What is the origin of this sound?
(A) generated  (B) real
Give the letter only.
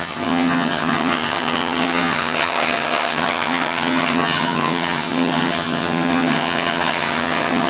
A